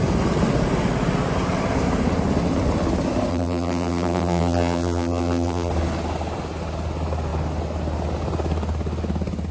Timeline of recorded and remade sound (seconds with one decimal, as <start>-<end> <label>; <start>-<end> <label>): 0.0-3.3 recorded; 3.3-5.7 remade; 5.7-9.5 recorded